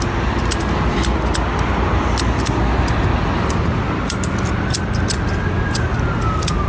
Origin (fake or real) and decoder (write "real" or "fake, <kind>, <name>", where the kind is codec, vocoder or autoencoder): real